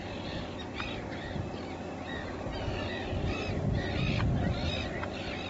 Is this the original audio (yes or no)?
yes